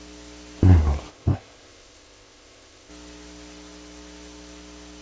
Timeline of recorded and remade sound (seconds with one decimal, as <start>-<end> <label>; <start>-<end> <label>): 0.0-1.1 recorded; 1.1-2.9 remade; 2.9-5.0 recorded